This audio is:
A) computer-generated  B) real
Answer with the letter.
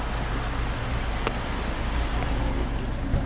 B